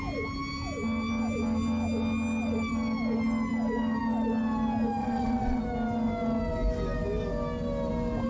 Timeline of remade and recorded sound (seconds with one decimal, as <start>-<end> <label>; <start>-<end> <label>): 0.0-5.0 recorded; 5.0-5.6 remade; 5.6-8.3 recorded